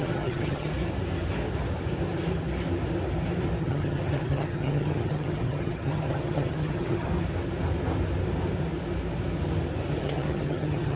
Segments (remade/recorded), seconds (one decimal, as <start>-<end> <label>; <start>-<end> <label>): 0.0-0.7 remade; 0.7-3.6 recorded; 3.6-7.1 remade; 7.1-10.0 recorded; 10.0-11.0 remade